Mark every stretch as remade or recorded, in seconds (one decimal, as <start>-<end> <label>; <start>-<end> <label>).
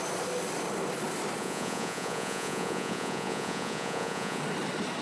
0.0-1.4 recorded; 1.4-4.4 remade; 4.4-5.0 recorded